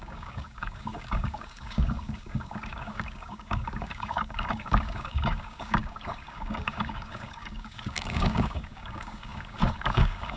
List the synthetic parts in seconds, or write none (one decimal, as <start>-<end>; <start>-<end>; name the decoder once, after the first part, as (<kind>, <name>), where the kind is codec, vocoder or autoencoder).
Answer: 0.0-10.4 (codec, DAC)